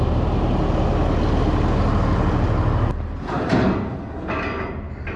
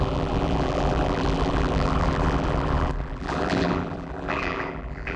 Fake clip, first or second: second